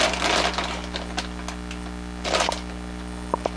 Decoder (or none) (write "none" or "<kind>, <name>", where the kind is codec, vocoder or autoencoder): none